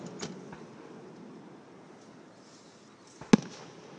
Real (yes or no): yes